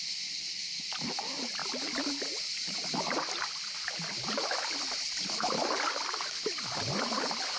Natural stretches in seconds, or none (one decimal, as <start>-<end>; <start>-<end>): 0.0-7.6